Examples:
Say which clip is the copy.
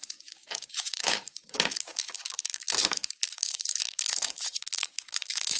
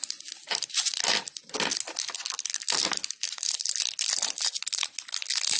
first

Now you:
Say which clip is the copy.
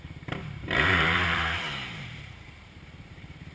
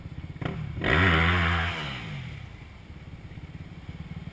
first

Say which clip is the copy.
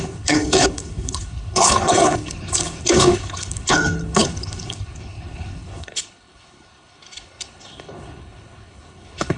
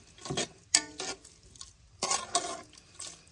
first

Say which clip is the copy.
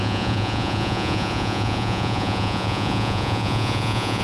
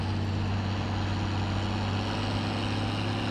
first